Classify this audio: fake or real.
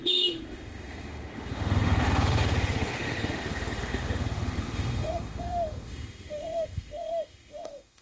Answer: fake